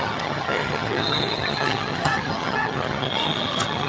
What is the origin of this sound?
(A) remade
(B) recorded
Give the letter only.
A